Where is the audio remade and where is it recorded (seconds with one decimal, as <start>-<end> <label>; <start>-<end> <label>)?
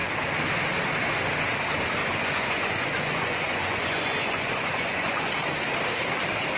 0.0-2.0 recorded; 2.0-5.3 remade; 5.3-6.6 recorded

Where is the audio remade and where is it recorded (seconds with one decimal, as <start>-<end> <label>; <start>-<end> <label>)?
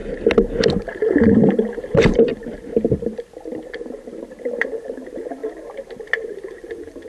0.0-1.1 recorded; 1.1-2.3 remade; 2.3-4.4 recorded; 4.4-5.4 remade; 5.4-6.2 recorded; 6.2-7.1 remade